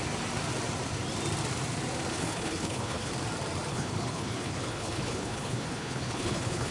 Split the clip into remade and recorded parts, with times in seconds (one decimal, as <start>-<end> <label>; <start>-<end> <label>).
0.0-2.1 recorded; 2.1-3.1 remade; 3.1-3.7 recorded; 3.7-6.7 remade